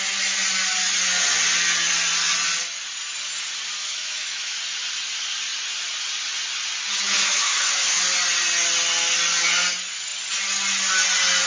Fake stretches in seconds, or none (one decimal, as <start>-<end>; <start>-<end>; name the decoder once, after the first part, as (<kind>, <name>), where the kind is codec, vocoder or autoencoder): 3.8-4.6 (autoencoder, DAC-VAE); 7.2-8.0